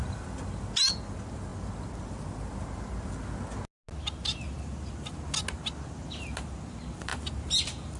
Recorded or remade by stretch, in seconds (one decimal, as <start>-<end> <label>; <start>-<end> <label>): 0.0-8.0 recorded